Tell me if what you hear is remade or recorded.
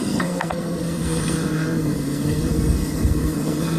remade